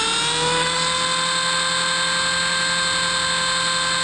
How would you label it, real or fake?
real